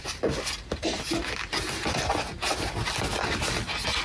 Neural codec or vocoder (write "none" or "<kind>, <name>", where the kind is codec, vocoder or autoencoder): none